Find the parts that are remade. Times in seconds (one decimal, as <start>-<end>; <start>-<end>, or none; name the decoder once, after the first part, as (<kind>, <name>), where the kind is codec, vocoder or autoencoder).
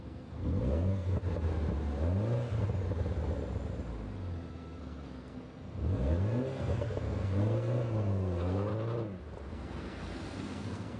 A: 0.0-1.2 (codec, SNAC); 4.5-8.7; 9.5-11.0